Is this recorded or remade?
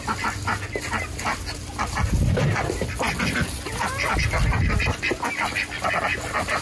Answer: recorded